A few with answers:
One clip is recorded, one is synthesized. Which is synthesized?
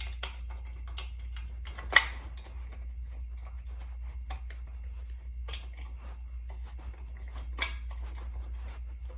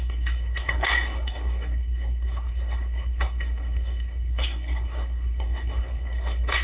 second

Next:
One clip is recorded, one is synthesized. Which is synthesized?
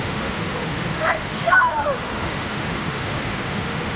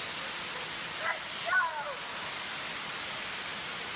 first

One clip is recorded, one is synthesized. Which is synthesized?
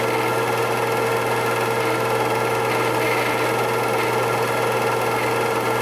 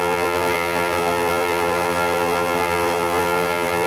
second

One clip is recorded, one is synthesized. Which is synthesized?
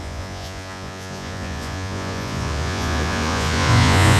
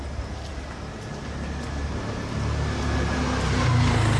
first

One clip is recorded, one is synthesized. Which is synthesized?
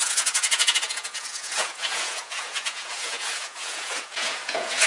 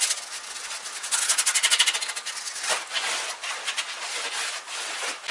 first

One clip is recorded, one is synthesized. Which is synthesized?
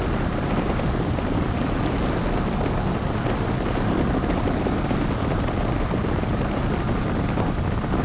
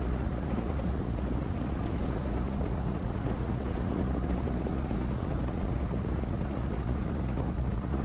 second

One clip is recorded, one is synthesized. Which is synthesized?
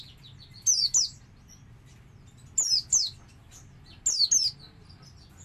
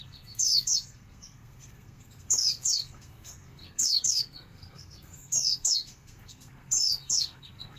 second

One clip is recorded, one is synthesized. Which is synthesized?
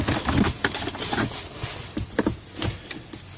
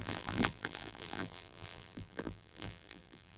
second